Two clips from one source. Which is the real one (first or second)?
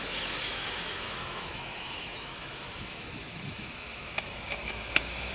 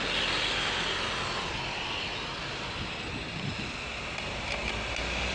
second